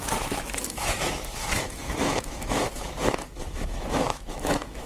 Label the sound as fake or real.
fake